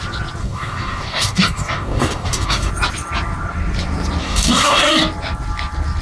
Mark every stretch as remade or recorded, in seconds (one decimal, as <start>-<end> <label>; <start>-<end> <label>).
0.0-0.4 recorded; 0.4-2.7 remade; 2.7-4.2 recorded; 4.2-4.8 remade; 4.8-6.0 recorded